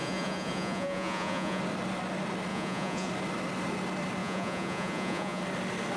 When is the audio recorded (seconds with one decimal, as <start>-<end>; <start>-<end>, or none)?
1.6-2.5; 3.1-4.2; 5.4-6.0